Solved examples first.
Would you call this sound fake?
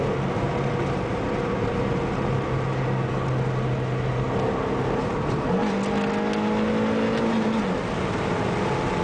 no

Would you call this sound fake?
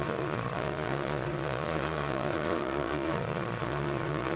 yes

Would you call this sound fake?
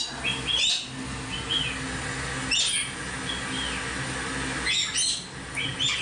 no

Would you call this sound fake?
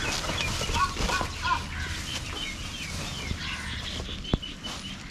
no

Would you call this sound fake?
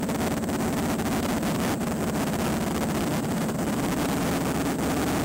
no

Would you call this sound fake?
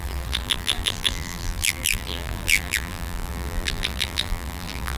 yes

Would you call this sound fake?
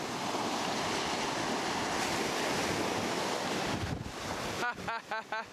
no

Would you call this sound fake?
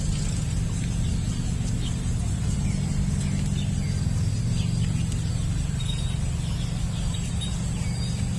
no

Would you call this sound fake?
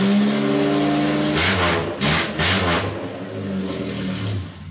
no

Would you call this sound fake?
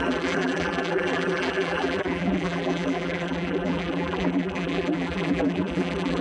yes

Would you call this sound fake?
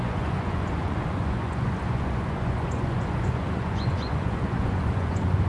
yes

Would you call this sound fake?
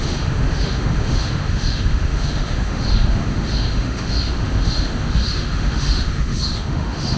yes